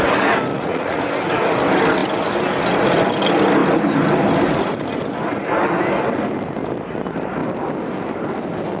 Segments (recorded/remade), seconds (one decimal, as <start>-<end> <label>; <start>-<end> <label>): 0.0-0.5 recorded; 0.5-1.0 remade; 1.0-8.8 recorded

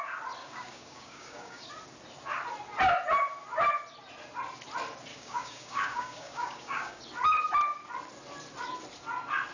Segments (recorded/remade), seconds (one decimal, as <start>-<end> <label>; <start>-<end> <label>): 0.0-0.4 recorded; 0.4-1.7 remade; 1.7-5.1 recorded; 5.1-7.0 remade; 7.0-9.5 recorded